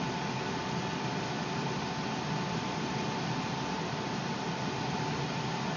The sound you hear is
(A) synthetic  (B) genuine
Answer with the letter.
B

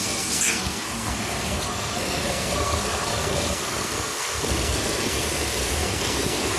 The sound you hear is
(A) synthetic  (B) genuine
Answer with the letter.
A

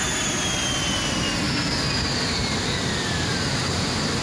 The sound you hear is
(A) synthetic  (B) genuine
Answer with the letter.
B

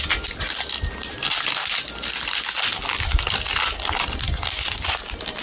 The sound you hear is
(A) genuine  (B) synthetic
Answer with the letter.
A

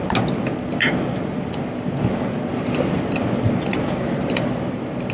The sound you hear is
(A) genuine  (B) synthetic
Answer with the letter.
A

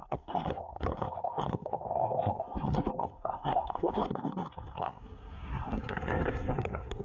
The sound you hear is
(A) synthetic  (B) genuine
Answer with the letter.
A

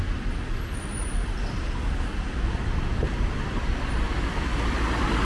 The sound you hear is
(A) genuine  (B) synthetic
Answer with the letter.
A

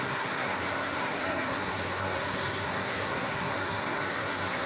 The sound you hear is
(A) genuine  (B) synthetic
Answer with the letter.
B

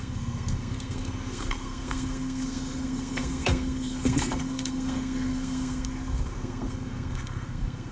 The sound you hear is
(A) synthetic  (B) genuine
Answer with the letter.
A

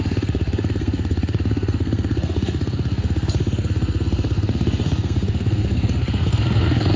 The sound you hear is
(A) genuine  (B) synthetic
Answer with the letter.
B